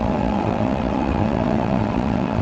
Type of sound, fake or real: fake